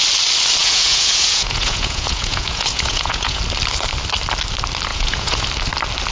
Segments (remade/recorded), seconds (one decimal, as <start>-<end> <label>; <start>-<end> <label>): 0.0-0.6 recorded; 0.6-3.4 remade; 3.4-4.9 recorded; 4.9-5.4 remade; 5.4-6.1 recorded